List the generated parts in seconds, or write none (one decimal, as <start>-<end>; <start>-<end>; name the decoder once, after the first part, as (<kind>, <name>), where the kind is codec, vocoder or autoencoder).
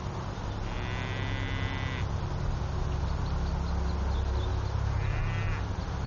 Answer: none